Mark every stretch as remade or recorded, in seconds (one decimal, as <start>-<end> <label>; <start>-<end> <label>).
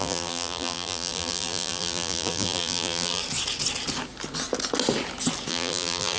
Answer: 0.0-3.2 remade; 3.2-5.5 recorded; 5.5-6.2 remade